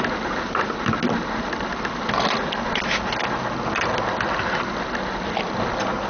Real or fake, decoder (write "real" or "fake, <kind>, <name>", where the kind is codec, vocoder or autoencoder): real